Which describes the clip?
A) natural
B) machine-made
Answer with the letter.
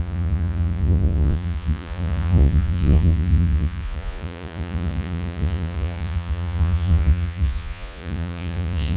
B